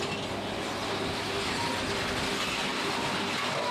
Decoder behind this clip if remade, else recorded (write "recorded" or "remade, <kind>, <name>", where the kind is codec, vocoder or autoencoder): recorded